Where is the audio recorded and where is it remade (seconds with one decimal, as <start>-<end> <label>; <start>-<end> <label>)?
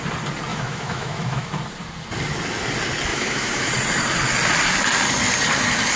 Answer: 0.0-0.5 recorded; 0.5-1.5 remade; 1.5-3.1 recorded; 3.1-3.7 remade; 3.7-6.0 recorded